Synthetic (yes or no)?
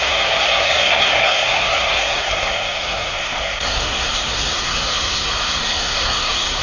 yes